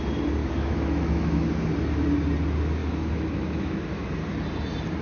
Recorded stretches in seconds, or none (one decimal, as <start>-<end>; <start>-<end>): 0.0-0.4; 1.5-2.8; 4.1-5.0